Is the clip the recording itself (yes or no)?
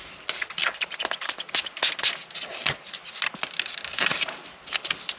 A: yes